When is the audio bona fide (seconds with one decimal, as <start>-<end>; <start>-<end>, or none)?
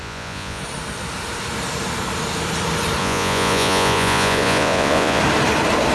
0.6-3.0; 5.2-5.9